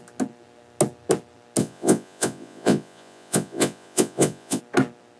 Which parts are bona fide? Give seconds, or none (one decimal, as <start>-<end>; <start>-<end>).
0.0-1.6; 4.6-5.2